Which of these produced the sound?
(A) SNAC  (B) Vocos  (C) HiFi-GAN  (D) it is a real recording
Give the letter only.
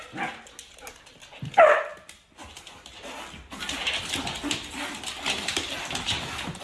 D